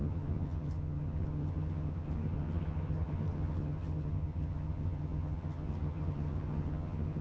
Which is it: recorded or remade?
remade